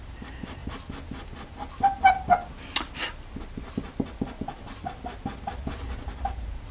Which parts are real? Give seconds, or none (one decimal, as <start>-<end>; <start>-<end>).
0.0-6.7